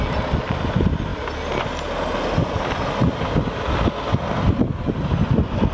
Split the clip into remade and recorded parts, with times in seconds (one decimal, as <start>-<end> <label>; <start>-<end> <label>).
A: 0.0-5.7 recorded